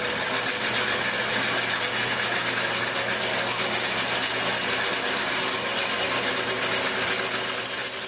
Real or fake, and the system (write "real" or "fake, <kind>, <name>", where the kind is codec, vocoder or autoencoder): real